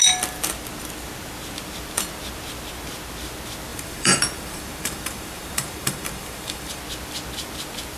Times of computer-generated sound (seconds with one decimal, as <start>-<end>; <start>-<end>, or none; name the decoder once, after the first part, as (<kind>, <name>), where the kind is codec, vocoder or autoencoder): 3.7-6.8 (vocoder, BigVGAN v2)